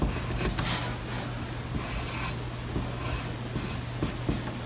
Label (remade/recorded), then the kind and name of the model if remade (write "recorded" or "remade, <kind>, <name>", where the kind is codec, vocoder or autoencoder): recorded